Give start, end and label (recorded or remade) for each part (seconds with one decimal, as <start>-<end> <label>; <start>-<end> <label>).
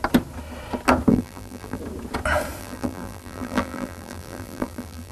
0.0-1.1 recorded; 1.1-1.8 remade; 1.8-2.6 recorded; 2.6-5.1 remade